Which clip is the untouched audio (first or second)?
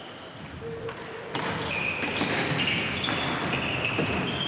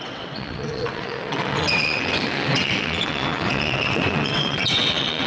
first